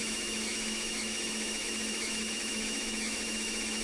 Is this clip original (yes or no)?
no